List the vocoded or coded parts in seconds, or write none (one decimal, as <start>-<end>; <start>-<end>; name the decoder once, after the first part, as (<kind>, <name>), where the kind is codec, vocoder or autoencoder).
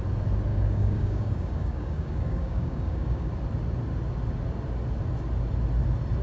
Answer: 0.5-3.3 (codec, DAC)